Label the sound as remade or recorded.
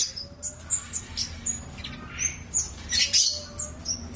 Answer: recorded